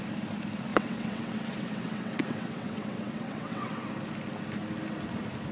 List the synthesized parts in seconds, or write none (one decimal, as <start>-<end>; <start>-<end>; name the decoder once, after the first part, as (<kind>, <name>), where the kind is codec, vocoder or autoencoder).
0.7-3.8 (vocoder, WaveNeXt)